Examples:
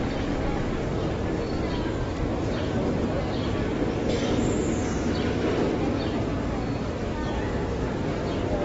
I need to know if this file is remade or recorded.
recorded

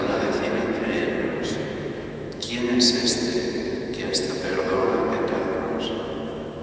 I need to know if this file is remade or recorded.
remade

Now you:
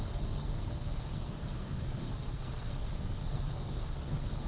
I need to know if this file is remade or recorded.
remade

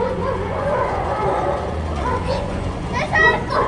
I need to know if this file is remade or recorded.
remade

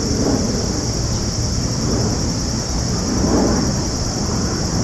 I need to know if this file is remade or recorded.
recorded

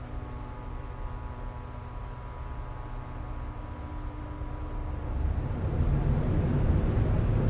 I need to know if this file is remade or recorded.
recorded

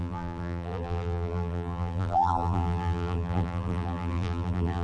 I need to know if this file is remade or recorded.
remade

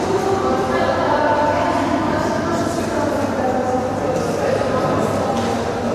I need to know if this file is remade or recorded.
remade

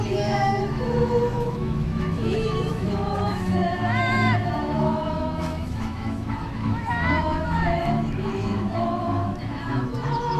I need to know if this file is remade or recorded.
remade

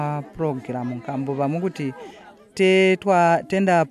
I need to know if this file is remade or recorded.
recorded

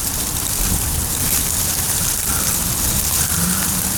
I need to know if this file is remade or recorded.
remade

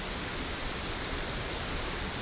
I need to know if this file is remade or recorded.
recorded